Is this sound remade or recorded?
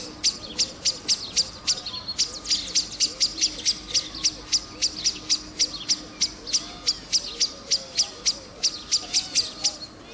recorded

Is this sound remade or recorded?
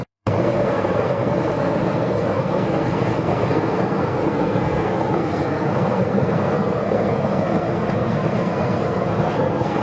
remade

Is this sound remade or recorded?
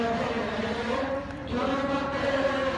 recorded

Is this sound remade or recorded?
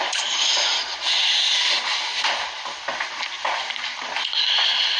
recorded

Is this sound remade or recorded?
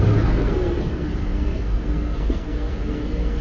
remade